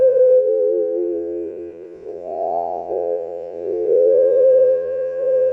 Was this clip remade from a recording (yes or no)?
yes